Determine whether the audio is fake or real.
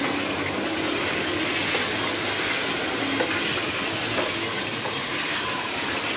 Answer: real